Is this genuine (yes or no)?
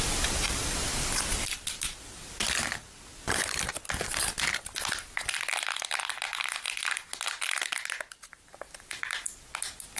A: yes